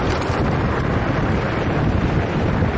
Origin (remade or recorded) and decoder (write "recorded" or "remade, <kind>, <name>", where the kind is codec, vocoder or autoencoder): remade, vocoder, BigVGAN v2